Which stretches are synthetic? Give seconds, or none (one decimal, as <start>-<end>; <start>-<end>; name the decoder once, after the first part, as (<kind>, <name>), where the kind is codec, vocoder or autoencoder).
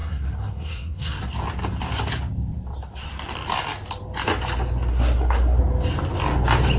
0.0-1.2 (codec, SNAC); 4.9-5.6